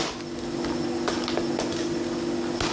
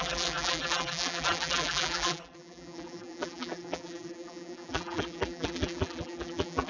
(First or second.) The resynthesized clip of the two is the second